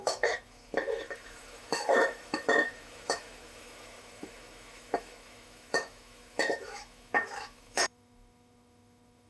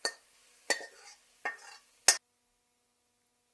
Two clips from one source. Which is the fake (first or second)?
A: first